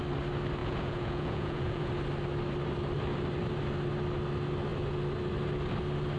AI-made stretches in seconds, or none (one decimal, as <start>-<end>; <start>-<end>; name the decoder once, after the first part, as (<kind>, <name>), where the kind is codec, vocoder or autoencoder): 0.6-1.9 (vocoder, Vocos)